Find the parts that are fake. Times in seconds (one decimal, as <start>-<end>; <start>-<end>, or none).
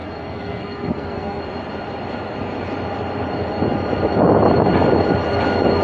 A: 0.0-1.4